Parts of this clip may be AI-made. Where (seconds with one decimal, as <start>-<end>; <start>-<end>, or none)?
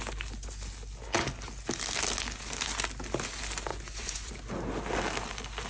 3.7-4.3